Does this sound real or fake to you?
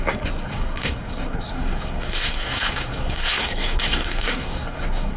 fake